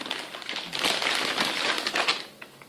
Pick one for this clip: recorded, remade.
recorded